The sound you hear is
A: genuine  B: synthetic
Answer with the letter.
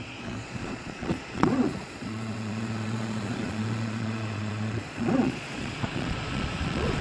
B